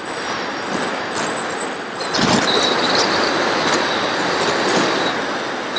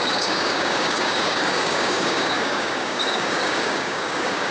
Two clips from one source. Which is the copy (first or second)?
second